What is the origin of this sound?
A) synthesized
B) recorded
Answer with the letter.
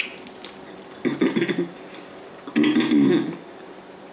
B